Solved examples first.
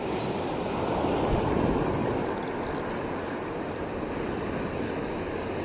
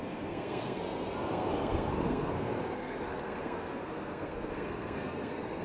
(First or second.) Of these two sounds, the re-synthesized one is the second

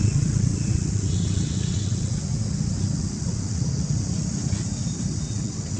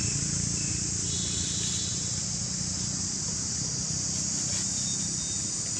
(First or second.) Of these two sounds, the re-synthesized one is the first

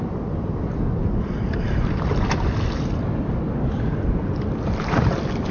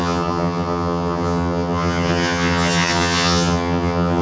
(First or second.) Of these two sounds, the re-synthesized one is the second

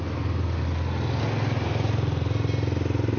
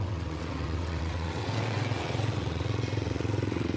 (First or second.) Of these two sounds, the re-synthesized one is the second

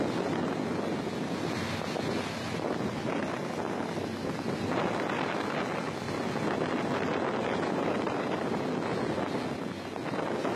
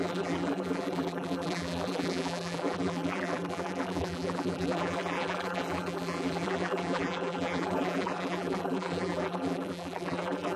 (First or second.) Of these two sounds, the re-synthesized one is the second